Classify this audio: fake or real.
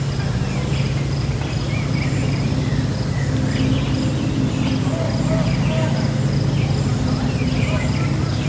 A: real